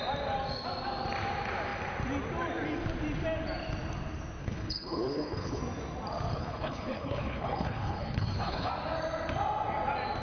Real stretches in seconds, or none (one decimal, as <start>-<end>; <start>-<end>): 0.0-4.4; 5.6-6.3; 8.7-10.2